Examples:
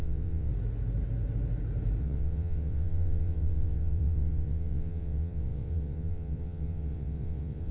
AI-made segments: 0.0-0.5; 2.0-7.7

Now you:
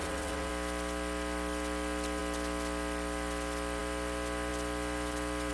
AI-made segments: 0.0-0.5

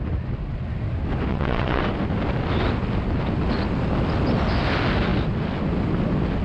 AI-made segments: 1.3-1.8

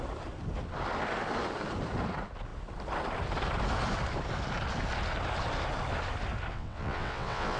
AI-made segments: 6.5-7.6

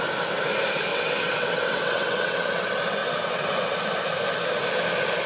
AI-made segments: 0.9-2.6; 3.0-3.5

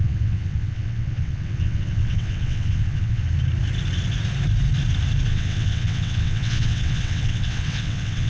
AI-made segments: 0.0-3.2; 5.3-8.3